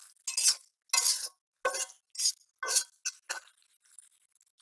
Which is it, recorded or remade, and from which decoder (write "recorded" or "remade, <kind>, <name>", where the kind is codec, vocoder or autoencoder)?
recorded